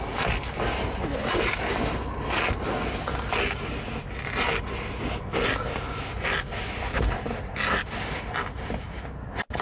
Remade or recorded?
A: recorded